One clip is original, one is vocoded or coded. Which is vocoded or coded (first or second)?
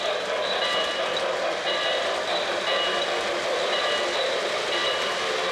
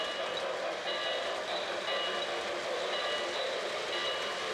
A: first